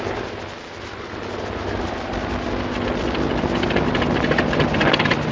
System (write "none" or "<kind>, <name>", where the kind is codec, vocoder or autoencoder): none